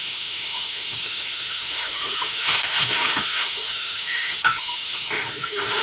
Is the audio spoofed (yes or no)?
yes